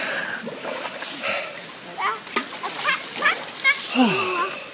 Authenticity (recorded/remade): recorded